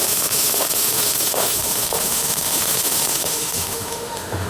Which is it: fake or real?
fake